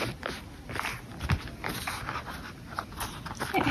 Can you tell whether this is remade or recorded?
recorded